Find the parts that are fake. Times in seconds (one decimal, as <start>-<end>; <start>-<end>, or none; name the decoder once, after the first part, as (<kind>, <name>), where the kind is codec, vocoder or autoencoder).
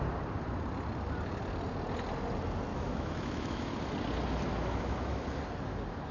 2.7-3.7 (autoencoder, DAC-VAE); 4.5-5.2